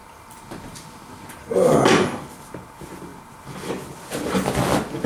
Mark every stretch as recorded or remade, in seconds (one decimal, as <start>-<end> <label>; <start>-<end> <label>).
0.0-5.1 recorded